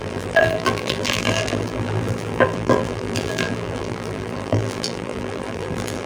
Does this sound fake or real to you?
fake